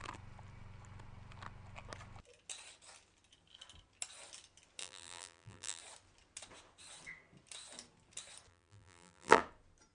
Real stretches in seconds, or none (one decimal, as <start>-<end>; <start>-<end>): 0.0-4.8; 5.8-8.5; 9.4-9.9